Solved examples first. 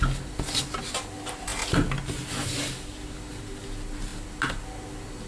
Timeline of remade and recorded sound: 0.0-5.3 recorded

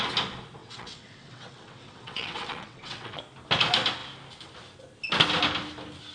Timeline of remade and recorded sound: 0.0-0.6 recorded; 0.6-3.2 remade; 3.2-6.1 recorded

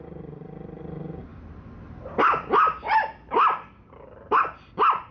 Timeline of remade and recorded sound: 0.0-5.1 recorded